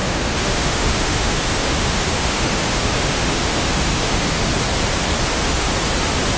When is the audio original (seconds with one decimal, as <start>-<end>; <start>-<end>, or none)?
4.5-5.3; 5.7-6.4